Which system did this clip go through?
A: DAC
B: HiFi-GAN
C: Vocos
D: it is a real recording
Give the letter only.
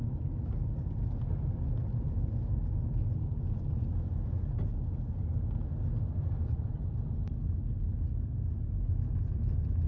D